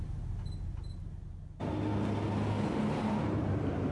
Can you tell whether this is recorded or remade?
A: recorded